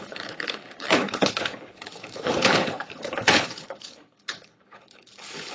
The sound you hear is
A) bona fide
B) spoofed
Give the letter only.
B